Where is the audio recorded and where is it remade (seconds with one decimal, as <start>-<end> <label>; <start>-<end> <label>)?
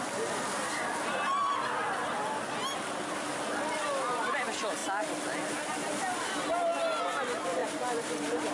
0.0-7.6 recorded; 7.6-8.5 remade